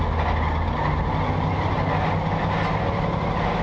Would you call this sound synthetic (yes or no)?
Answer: no